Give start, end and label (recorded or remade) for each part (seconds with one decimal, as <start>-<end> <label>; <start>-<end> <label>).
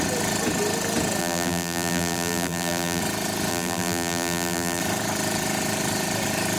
0.0-1.2 recorded; 1.2-3.0 remade; 3.0-3.5 recorded; 3.5-4.8 remade; 4.8-6.6 recorded